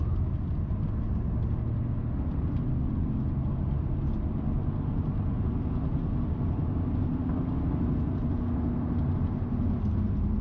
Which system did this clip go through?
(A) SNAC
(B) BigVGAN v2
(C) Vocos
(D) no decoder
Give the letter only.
D